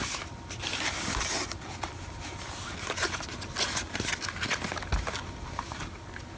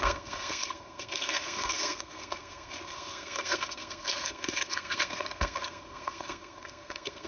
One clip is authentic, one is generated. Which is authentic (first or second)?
first